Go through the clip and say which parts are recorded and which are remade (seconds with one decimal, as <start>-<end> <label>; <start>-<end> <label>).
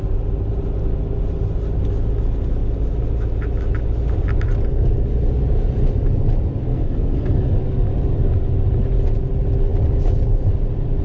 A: 0.0-6.7 recorded; 6.7-7.4 remade; 7.4-11.0 recorded